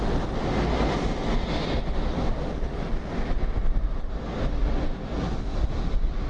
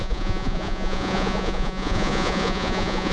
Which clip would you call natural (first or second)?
first